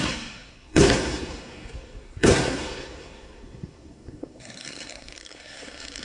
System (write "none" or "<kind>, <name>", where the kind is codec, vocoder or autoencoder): codec, SNAC